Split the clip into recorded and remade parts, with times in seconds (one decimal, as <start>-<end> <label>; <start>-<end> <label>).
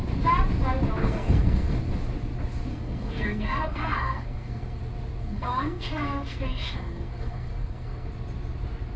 0.0-1.0 recorded; 1.0-1.8 remade; 1.8-2.7 recorded; 2.7-4.8 remade; 4.8-5.2 recorded; 5.2-8.1 remade; 8.1-9.0 recorded